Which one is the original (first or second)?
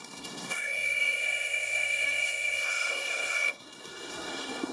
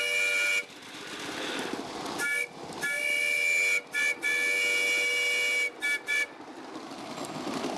second